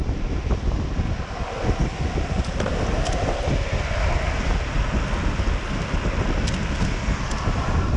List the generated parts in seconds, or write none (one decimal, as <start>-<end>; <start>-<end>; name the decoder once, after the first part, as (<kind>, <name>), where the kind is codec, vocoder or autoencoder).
none